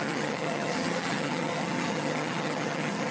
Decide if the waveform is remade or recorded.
remade